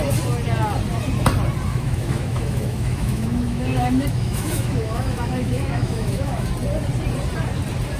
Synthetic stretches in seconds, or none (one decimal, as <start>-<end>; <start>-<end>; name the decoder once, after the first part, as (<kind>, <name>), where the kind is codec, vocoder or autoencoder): 1.7-6.5 (autoencoder, DAC-VAE)